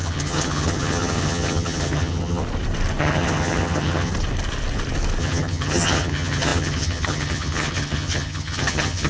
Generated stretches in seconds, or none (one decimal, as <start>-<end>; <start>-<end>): 0.0-2.4; 3.0-4.1; 5.2-9.1